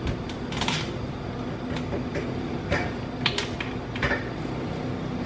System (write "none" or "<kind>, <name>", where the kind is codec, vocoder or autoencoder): none